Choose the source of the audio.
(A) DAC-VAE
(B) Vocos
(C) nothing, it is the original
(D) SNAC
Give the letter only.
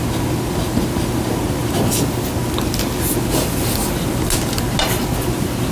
C